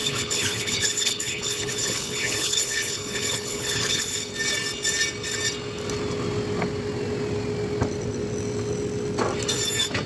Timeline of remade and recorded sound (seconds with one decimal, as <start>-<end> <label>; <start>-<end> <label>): 0.0-4.3 remade; 4.3-10.1 recorded